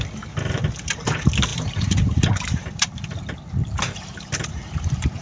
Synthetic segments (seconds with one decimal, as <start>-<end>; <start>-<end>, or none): 1.5-3.0; 3.6-5.2